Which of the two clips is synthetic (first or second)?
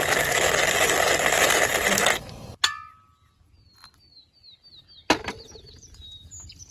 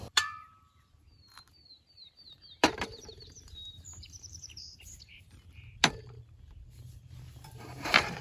second